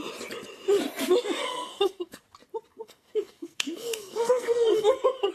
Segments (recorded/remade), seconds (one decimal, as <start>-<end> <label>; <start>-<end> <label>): 0.0-1.4 recorded; 1.4-2.2 remade; 2.2-2.7 recorded; 2.7-5.3 remade